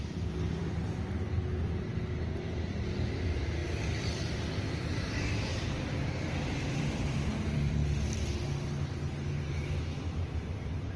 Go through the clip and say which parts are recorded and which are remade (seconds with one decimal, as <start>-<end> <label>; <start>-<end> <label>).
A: 0.0-0.8 remade; 0.8-3.0 recorded; 3.0-3.6 remade; 3.6-4.6 recorded; 4.6-7.8 remade; 7.8-9.5 recorded; 9.5-11.0 remade